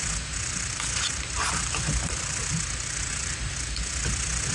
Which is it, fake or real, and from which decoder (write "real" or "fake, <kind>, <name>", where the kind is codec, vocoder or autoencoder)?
real